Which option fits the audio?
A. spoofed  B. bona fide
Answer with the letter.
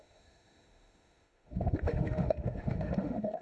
A